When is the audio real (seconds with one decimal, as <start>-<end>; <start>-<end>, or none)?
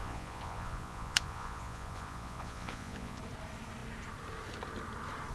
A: 3.2-5.3